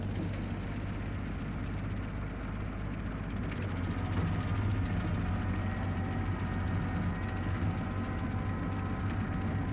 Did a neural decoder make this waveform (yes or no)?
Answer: no